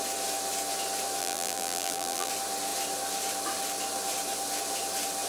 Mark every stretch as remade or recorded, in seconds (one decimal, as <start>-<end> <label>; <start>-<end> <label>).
0.0-1.2 recorded; 1.2-2.3 remade; 2.3-5.3 recorded